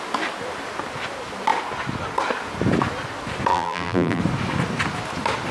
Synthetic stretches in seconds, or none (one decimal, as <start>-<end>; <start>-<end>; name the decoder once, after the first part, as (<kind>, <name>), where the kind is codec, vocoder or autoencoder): 3.5-4.2 (vocoder, BigVGAN v2)